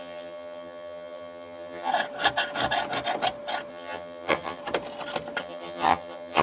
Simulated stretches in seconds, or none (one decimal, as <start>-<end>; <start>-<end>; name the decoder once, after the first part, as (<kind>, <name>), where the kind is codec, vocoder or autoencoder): 0.0-1.9 (vocoder, HiFi-GAN); 3.7-4.6; 5.4-6.4